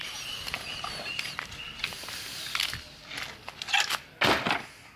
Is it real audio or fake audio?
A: real